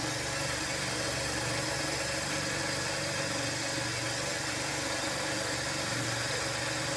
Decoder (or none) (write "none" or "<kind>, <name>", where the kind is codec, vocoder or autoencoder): none